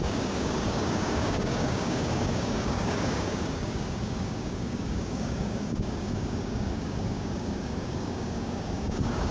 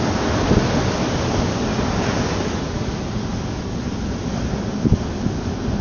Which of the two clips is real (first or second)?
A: second